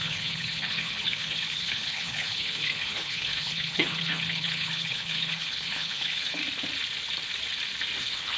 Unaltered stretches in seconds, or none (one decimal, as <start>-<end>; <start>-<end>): 6.4-8.0